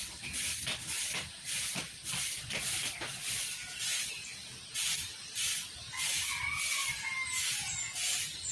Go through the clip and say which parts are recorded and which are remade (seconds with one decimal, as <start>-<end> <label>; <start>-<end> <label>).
0.0-6.8 recorded; 6.8-8.5 remade

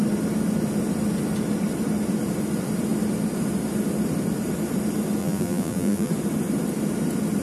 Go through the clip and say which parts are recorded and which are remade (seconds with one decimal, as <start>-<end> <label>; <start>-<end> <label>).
0.0-5.2 recorded; 5.2-6.1 remade; 6.1-7.4 recorded

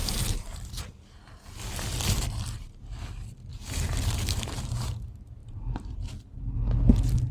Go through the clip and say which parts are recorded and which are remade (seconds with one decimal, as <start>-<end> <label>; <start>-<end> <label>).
0.0-0.8 remade; 0.8-3.5 recorded; 3.5-5.0 remade; 5.0-5.4 recorded; 5.4-6.1 remade; 6.1-7.3 recorded

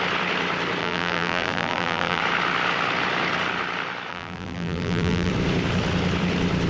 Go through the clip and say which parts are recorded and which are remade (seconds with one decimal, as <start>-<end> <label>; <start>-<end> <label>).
0.0-0.8 recorded; 0.8-2.2 remade; 2.2-4.1 recorded; 4.1-5.3 remade; 5.3-6.7 recorded

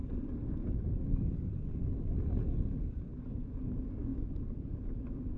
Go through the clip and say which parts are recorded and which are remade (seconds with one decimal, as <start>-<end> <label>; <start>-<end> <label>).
0.0-2.3 remade; 2.3-5.4 recorded